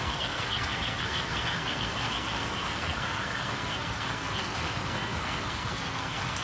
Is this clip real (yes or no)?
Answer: no